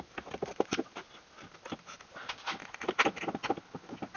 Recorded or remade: recorded